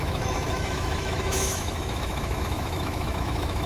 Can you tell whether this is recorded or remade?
remade